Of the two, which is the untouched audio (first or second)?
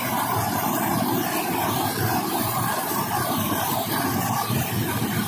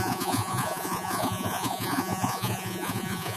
first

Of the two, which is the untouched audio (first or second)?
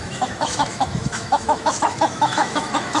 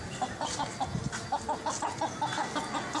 second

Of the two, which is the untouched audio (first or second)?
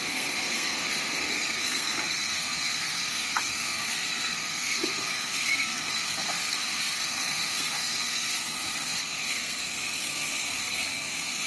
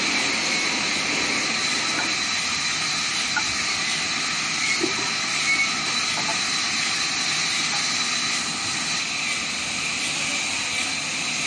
second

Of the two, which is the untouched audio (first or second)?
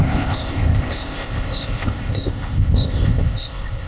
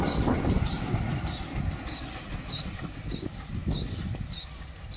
second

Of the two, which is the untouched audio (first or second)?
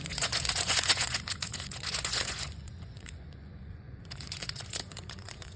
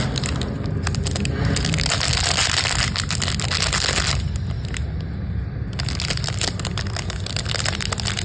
second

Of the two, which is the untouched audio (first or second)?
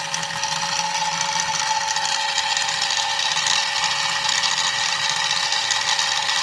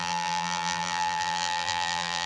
first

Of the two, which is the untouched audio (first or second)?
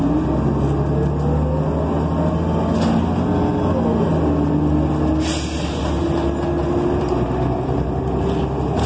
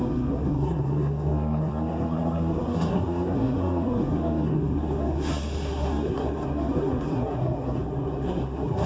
first